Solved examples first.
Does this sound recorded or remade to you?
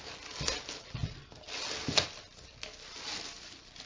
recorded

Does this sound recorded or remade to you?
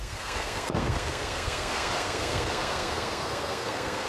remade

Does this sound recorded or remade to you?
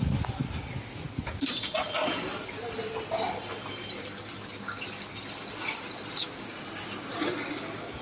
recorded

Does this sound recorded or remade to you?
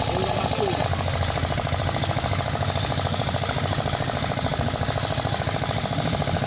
recorded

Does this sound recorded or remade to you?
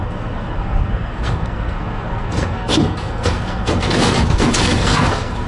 remade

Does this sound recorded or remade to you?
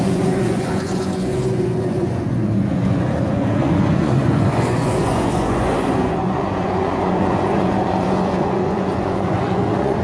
remade